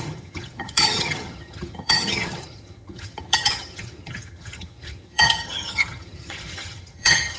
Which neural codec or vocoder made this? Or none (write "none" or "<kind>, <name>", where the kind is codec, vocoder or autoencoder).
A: vocoder, HiFi-GAN